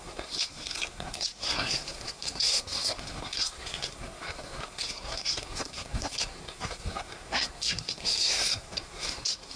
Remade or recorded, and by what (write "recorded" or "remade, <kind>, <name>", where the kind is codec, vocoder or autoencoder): remade, codec, SNAC